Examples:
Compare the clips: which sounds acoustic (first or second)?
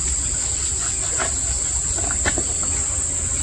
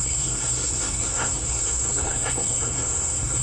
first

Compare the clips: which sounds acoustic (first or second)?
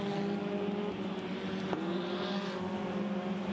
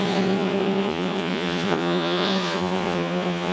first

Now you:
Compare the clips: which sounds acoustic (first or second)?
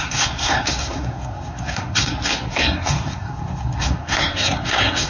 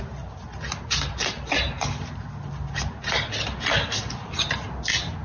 second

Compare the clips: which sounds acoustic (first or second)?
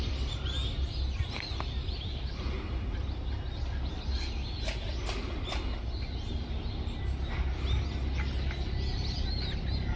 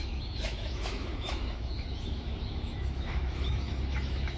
first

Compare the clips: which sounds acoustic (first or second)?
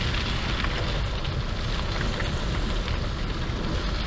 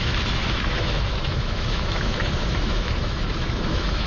first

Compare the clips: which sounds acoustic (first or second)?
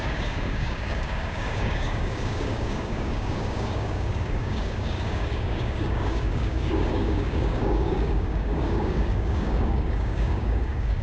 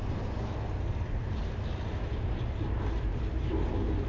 second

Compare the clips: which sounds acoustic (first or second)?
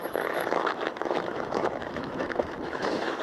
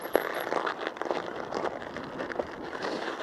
second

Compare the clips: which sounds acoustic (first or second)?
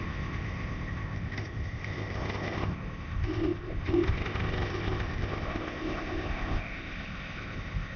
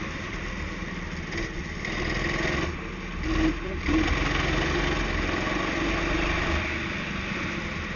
second